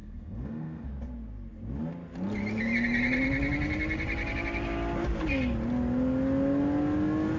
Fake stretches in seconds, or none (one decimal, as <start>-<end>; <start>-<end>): 0.0-0.9